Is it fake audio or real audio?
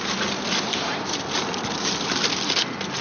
real